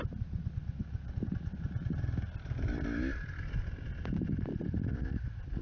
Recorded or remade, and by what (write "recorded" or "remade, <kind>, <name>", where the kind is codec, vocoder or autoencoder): recorded